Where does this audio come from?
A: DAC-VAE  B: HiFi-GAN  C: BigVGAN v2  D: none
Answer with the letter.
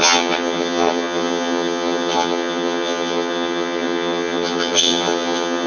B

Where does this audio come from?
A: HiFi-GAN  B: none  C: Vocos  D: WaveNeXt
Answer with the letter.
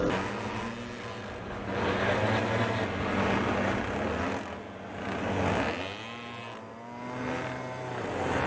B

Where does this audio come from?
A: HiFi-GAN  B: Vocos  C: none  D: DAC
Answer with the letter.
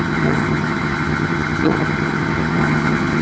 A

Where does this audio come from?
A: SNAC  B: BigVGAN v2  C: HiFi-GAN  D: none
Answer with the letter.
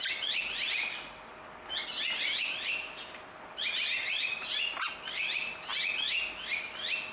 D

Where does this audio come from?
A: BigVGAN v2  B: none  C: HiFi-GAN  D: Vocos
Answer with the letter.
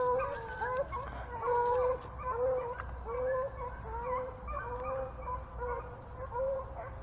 B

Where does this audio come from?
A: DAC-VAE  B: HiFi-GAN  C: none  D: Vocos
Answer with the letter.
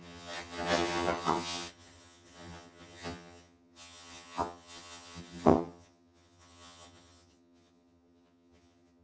B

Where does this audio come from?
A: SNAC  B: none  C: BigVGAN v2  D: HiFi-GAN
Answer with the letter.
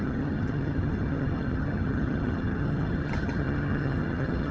D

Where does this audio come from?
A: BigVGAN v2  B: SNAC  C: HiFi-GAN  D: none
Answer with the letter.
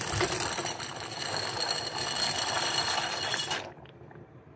D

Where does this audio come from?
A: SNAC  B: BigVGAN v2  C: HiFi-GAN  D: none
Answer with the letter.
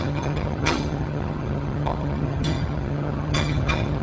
C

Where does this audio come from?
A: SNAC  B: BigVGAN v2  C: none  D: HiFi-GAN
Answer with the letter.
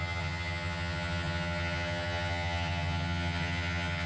D